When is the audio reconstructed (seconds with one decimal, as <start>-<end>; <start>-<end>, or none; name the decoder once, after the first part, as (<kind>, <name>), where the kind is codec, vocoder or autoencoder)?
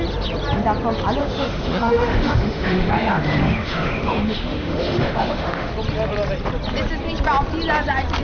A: 1.2-5.7 (autoencoder, DAC-VAE)